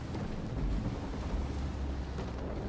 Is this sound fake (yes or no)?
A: no